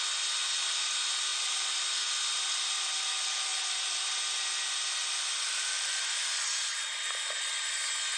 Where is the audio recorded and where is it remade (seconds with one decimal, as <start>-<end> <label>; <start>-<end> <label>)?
0.0-8.2 recorded